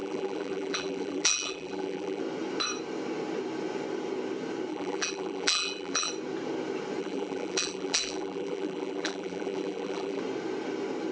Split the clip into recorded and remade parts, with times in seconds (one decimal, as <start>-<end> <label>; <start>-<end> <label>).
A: 0.0-2.2 remade; 2.2-4.7 recorded; 4.7-6.1 remade; 6.1-7.0 recorded; 7.0-10.2 remade; 10.2-11.1 recorded

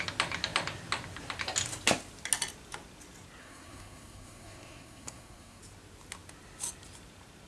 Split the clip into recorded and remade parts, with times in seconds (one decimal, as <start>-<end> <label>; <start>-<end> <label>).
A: 0.0-3.4 recorded; 3.4-5.6 remade; 5.6-7.5 recorded